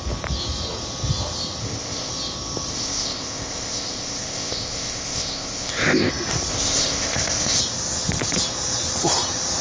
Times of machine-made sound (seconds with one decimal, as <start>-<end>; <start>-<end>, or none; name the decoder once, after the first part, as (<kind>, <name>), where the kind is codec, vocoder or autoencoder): 1.6-2.1 (codec, ZipCodec); 2.7-6.1; 6.5-7.6